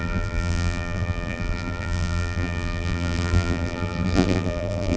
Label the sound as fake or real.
fake